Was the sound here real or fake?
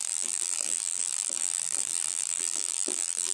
fake